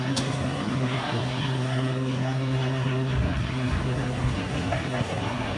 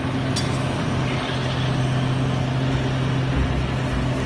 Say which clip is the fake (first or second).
first